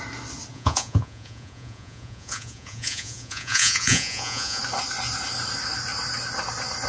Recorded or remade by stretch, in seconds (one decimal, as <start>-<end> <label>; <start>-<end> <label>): 0.0-0.5 recorded; 0.5-4.6 remade; 4.6-6.9 recorded